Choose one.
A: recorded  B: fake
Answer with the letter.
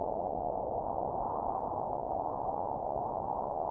B